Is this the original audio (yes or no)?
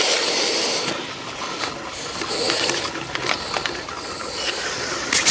yes